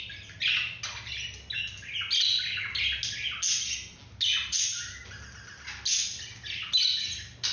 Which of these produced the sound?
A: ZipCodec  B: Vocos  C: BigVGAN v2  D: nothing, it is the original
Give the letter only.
D